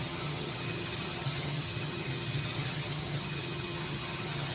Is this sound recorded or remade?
remade